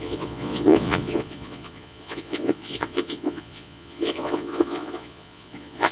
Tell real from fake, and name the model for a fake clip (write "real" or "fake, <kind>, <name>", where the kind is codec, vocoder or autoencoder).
fake, vocoder, Vocos